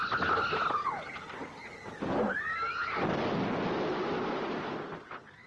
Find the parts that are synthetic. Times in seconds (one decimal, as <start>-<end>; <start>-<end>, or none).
none